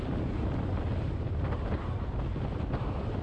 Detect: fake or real real